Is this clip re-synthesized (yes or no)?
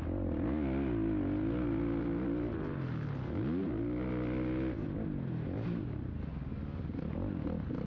no